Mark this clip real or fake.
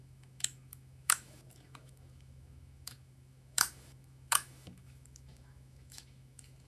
fake